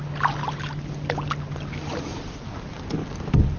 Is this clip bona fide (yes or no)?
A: yes